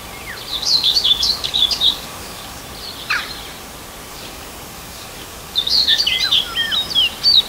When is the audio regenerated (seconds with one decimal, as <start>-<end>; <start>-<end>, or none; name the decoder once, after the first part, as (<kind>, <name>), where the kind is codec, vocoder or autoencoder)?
0.5-2.6 (codec, DAC); 4.1-6.0